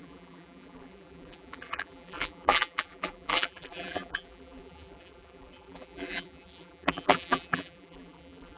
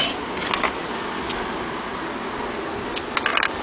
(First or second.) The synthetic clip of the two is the first